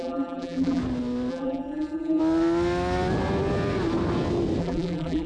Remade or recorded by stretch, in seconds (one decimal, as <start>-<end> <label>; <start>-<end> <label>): 0.0-0.8 remade; 0.8-1.3 recorded; 1.3-2.2 remade; 2.2-4.6 recorded; 4.6-5.3 remade